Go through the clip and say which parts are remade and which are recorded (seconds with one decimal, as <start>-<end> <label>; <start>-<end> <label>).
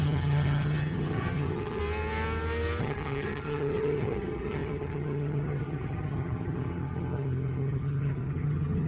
0.0-1.8 remade; 1.8-2.8 recorded; 2.8-8.9 remade